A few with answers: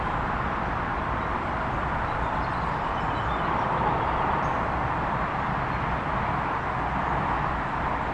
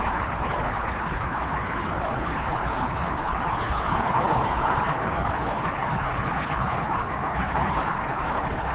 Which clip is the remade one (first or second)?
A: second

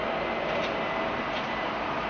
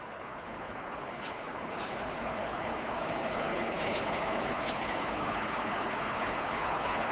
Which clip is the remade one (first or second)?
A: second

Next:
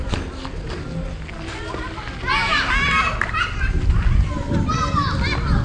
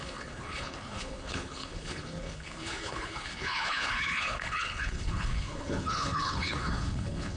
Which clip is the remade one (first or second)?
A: second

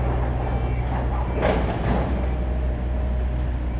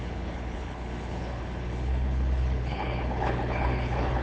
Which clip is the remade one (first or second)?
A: second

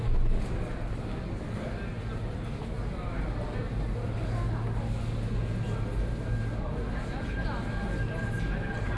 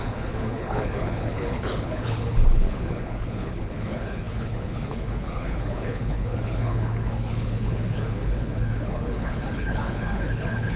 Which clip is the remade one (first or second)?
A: second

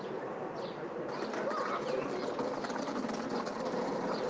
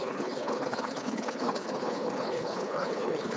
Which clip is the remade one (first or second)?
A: second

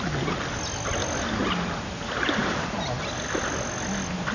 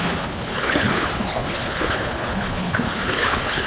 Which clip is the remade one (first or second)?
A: second